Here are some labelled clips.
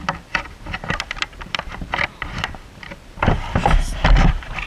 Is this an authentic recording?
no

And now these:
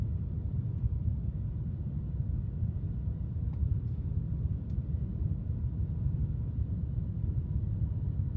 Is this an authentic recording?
yes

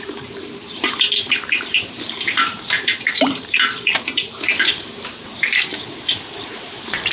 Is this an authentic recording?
no